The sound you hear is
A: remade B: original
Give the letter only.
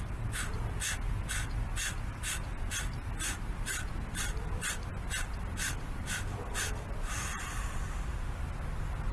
B